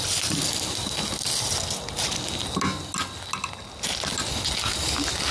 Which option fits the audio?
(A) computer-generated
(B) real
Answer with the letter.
B